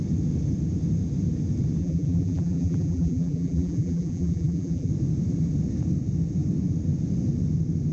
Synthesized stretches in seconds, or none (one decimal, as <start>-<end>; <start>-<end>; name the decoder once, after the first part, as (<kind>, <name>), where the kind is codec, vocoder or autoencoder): 1.8-4.9 (vocoder, BigVGAN v2)